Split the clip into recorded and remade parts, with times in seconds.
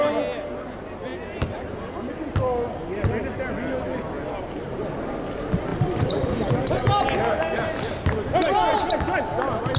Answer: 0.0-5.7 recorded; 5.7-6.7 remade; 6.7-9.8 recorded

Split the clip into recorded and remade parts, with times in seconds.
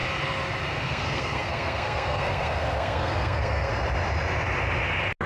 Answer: 0.0-0.7 recorded; 0.7-3.7 remade; 3.7-5.3 recorded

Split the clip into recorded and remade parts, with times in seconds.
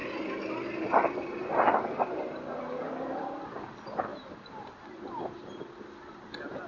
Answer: 0.0-4.1 recorded; 4.1-5.1 remade; 5.1-6.7 recorded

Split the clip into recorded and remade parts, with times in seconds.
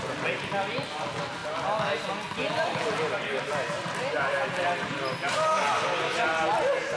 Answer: 0.0-4.1 recorded; 4.1-5.0 remade; 5.0-7.0 recorded